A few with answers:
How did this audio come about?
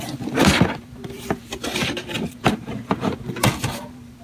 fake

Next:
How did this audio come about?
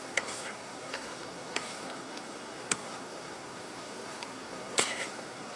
fake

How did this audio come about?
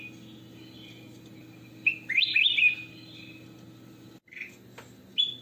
real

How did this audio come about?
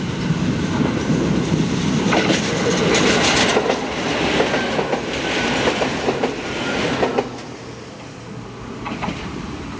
real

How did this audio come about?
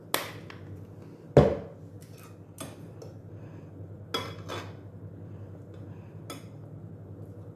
real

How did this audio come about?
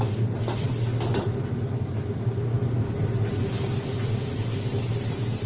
real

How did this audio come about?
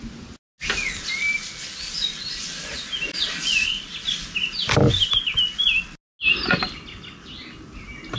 real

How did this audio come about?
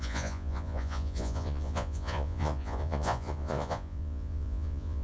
fake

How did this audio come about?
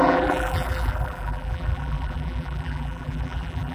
fake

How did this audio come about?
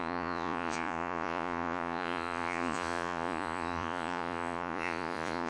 fake